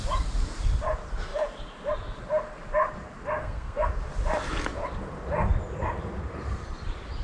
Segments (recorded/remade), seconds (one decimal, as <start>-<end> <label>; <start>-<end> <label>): 0.0-3.4 recorded; 3.4-3.9 remade; 3.9-7.2 recorded